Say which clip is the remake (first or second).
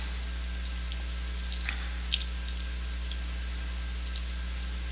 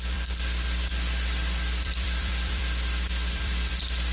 second